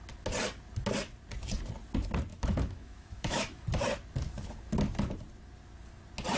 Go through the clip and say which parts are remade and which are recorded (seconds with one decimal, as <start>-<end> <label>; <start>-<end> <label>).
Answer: 0.0-2.3 recorded; 2.3-3.6 remade; 3.6-6.4 recorded